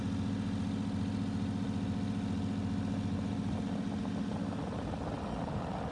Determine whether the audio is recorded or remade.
recorded